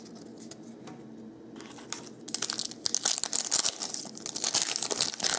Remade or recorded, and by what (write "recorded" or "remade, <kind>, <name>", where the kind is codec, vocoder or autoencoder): recorded